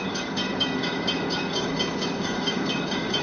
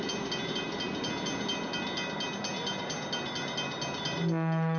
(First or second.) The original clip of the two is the second